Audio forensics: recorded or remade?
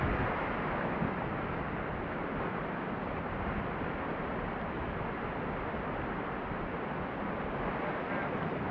recorded